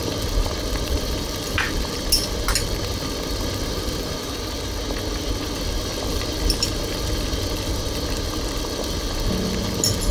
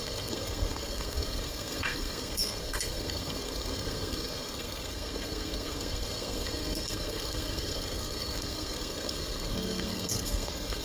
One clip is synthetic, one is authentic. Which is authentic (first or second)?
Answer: first